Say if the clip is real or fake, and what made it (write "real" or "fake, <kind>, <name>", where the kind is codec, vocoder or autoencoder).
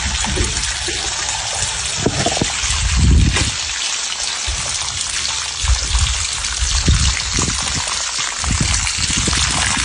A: real